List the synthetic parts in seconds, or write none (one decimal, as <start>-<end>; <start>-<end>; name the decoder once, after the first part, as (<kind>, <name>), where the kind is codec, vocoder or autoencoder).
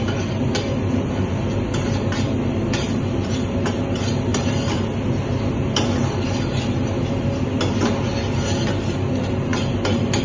none